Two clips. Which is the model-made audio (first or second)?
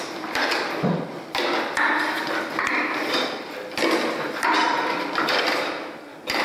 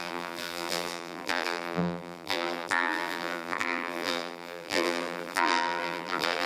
second